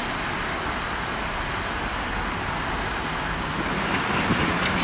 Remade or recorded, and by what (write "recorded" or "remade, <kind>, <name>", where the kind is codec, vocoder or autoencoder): recorded